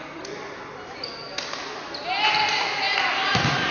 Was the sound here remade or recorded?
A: recorded